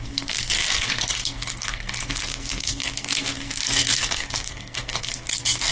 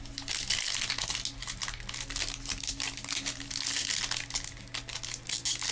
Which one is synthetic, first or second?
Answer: first